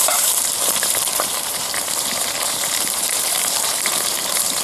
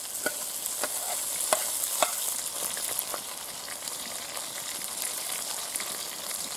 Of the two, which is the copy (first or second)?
first